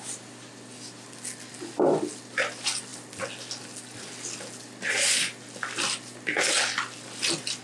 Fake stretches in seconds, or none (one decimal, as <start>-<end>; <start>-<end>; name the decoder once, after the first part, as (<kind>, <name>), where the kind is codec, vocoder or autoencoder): none